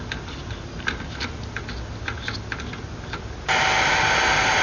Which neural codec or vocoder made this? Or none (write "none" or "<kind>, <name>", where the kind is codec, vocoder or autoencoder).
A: none